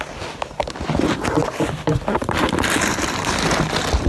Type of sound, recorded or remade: recorded